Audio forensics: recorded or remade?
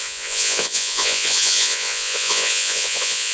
remade